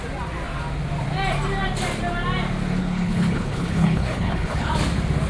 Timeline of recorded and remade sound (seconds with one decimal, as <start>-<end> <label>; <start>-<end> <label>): 0.0-2.8 recorded; 2.8-4.7 remade; 4.7-5.3 recorded